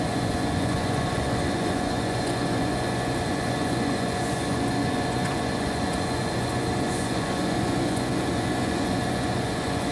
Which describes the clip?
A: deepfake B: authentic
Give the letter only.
A